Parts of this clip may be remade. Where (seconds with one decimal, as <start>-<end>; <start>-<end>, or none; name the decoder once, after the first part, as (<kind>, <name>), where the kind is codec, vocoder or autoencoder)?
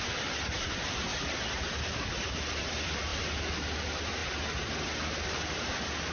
0.0-1.1 (vocoder, BigVGAN v2); 1.8-3.1; 3.8-4.2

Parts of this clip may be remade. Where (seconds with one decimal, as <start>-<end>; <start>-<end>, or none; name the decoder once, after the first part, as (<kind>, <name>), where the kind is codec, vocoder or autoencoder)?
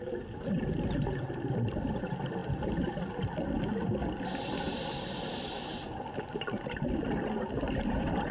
none